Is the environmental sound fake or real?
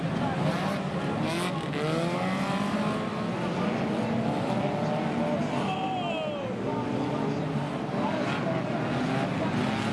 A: real